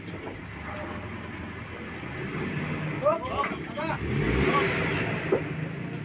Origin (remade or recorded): recorded